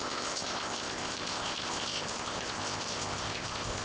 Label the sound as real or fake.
fake